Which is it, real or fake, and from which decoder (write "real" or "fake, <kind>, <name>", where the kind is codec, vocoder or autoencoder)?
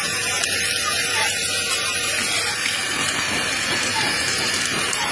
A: fake, vocoder, BigVGAN v2